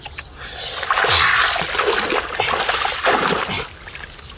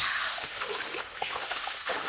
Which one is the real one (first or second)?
first